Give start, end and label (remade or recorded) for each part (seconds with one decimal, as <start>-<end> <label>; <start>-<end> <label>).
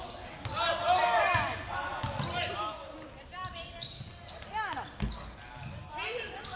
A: 0.0-6.6 recorded